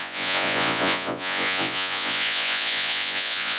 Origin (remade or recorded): remade